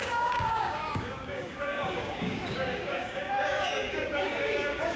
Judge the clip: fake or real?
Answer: fake